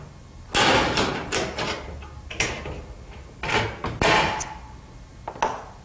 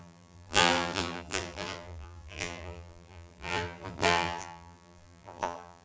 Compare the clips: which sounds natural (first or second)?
first